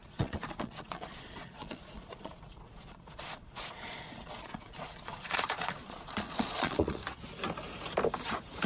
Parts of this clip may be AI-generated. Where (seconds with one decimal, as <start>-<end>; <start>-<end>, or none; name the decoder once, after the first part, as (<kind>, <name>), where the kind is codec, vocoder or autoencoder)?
0.0-7.0 (vocoder, Vocos)